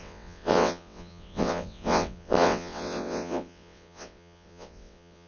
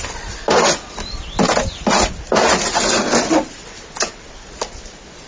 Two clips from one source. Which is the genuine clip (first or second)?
second